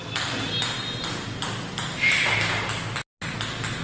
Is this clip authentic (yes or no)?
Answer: yes